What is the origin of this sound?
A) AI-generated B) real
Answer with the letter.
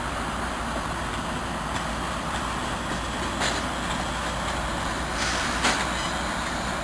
A